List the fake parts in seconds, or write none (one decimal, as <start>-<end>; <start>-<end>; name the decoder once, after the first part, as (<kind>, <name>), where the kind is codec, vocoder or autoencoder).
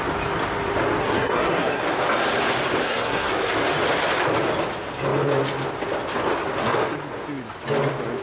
1.0-1.8 (codec, SNAC); 2.8-3.3